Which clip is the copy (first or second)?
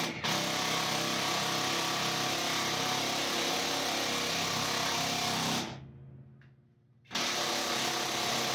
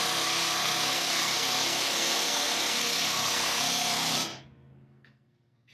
second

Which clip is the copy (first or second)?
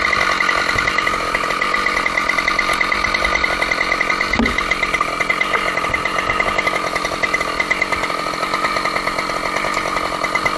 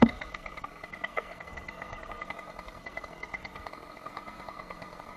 second